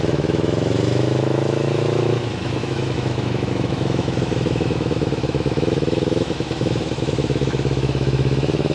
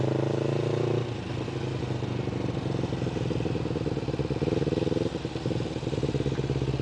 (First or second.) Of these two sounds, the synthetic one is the first